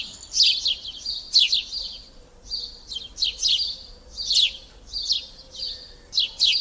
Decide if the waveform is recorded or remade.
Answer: recorded